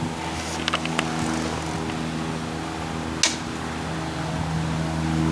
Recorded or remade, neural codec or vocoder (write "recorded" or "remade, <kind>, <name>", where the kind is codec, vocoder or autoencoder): recorded